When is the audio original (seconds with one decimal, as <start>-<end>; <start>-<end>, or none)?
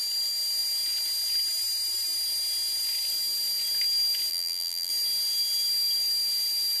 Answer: 0.0-4.3; 4.9-6.8